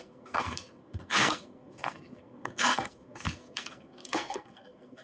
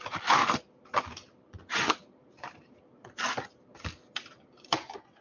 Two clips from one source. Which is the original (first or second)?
second